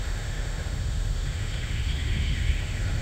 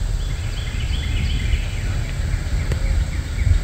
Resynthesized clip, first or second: first